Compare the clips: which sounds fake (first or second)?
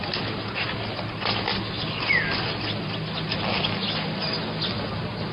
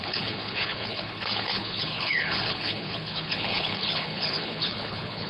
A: second